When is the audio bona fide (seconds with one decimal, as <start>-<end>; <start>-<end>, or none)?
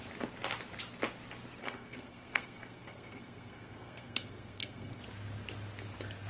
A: 0.0-1.6; 5.0-6.3